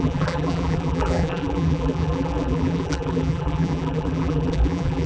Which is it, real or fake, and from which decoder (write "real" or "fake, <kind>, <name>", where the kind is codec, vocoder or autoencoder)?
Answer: fake, vocoder, BigVGAN v2